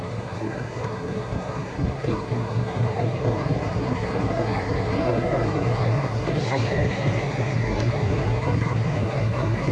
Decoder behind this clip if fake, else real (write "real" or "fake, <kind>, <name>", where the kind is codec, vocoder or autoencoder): fake, codec, SNAC